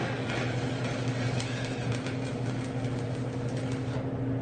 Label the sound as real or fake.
real